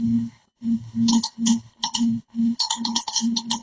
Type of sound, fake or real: fake